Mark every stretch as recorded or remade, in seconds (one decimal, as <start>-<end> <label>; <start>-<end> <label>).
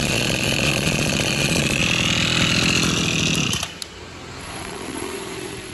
0.0-1.8 remade; 1.8-4.4 recorded; 4.4-5.7 remade